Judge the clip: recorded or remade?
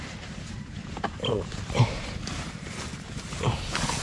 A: remade